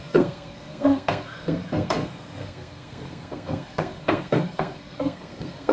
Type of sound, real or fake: fake